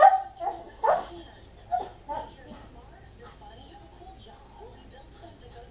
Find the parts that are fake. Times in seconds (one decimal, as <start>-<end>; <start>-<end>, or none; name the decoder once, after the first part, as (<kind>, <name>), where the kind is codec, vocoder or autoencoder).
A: 0.6-1.1 (autoencoder, DAC-VAE)